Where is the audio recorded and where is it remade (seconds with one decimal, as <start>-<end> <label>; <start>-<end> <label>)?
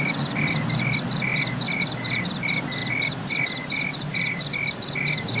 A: 0.0-1.3 remade; 1.3-2.2 recorded; 2.2-4.1 remade; 4.1-4.8 recorded; 4.8-5.4 remade